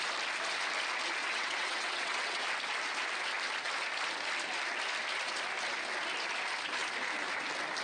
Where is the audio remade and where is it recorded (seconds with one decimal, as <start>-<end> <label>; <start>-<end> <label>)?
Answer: 0.0-1.2 recorded; 1.2-2.4 remade; 2.4-7.8 recorded

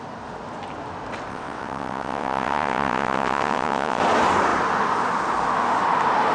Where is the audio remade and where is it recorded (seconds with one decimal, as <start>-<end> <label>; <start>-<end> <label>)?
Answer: 0.0-1.3 recorded; 1.3-4.0 remade; 4.0-6.3 recorded